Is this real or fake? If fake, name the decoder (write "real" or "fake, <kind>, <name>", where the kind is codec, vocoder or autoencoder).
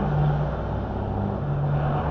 real